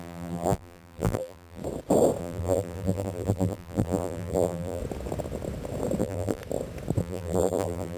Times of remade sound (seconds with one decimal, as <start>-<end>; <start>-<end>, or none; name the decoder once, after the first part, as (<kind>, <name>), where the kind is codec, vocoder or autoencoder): 0.0-1.6 (vocoder, BigVGAN v2); 2.2-4.8; 6.0-6.4; 7.0-8.0